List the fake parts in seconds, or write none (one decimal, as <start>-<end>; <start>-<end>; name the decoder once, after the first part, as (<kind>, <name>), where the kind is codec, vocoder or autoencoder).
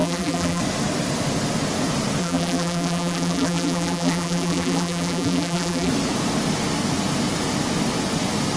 0.0-0.6 (vocoder, BigVGAN v2); 2.2-5.9